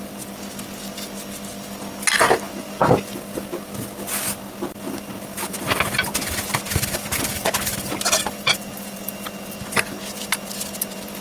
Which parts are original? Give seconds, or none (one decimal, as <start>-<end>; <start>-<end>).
0.0-11.2